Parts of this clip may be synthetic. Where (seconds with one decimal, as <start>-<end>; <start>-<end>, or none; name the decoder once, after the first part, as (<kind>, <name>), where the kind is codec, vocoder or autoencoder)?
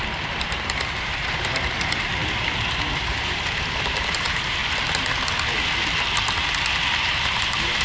0.0-4.6 (vocoder, BigVGAN v2); 7.0-7.8